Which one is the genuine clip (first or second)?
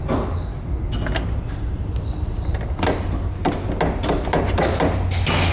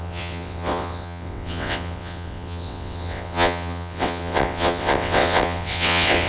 first